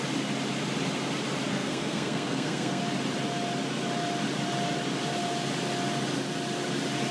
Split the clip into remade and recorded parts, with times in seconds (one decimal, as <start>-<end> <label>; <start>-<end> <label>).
0.0-1.5 recorded; 1.5-2.8 remade; 2.8-7.1 recorded